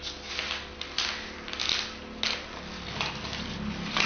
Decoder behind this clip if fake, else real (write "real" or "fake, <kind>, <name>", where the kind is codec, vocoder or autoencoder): real